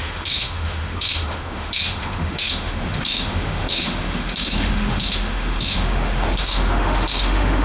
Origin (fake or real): fake